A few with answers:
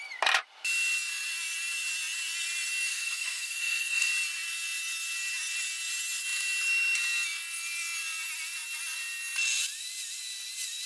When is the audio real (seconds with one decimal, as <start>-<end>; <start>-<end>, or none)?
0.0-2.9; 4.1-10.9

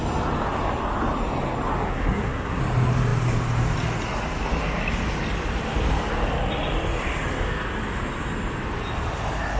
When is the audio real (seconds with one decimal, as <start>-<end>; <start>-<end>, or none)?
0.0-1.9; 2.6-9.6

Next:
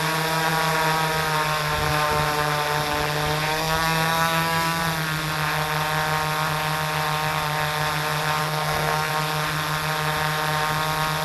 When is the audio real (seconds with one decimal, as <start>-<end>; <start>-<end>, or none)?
0.0-3.5; 4.8-8.4; 9.1-11.2

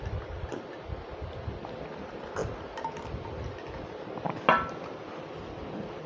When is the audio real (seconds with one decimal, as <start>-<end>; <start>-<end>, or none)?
0.0-6.1